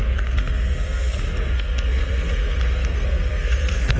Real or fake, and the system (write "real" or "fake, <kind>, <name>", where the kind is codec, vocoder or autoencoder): fake, codec, SNAC